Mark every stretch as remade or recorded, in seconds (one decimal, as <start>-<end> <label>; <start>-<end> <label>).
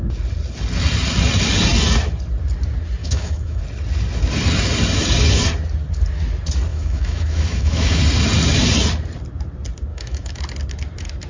0.0-3.0 recorded; 3.0-3.6 remade; 3.6-6.7 recorded; 6.7-8.0 remade; 8.0-9.9 recorded; 9.9-10.4 remade; 10.4-11.3 recorded